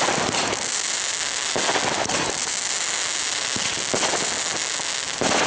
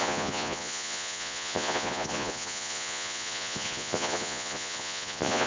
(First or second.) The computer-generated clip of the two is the second